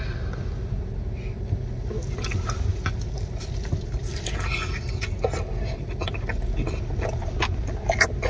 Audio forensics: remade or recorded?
recorded